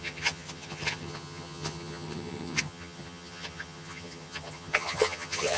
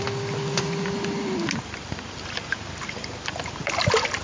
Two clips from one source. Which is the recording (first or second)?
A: second